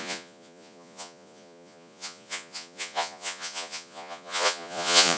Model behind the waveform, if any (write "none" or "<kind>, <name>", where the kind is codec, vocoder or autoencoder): vocoder, Vocos